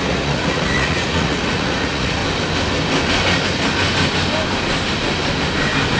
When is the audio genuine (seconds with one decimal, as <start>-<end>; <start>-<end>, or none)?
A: 2.2-6.0

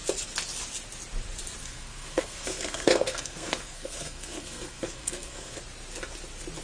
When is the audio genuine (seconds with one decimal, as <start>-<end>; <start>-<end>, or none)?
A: 0.0-1.6; 5.6-6.6

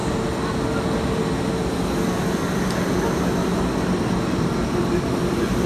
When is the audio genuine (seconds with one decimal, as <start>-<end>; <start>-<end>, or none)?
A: 0.0-5.7

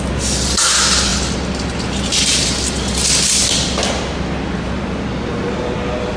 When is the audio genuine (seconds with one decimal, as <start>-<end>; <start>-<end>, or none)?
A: 0.0-6.2